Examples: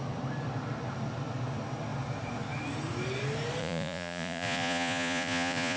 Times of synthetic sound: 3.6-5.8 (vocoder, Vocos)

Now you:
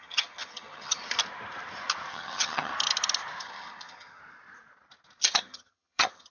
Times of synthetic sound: 0.0-1.0 (vocoder, HiFi-GAN); 2.1-2.7; 3.4-4.2; 5.3-6.3